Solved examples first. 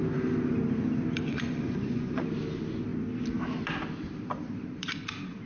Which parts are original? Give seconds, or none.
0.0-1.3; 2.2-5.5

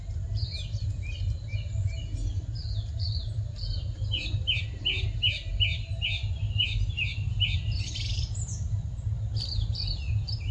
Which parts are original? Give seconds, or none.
0.0-10.5